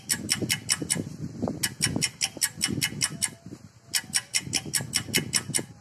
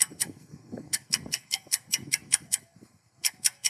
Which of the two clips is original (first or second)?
first